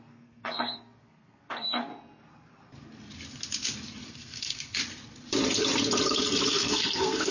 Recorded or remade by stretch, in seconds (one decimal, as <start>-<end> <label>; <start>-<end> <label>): 0.0-1.9 remade; 1.9-4.1 recorded; 4.1-4.8 remade; 4.8-6.5 recorded; 6.5-7.3 remade